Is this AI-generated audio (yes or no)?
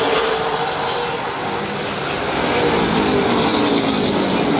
no